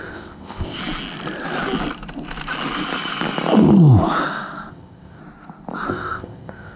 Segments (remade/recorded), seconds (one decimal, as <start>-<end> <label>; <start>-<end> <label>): 0.0-0.8 remade; 0.8-4.7 recorded; 4.7-5.2 remade; 5.2-5.9 recorded; 5.9-6.8 remade